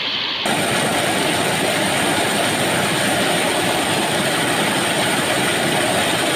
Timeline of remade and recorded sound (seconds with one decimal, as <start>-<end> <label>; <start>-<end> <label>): 0.0-6.4 recorded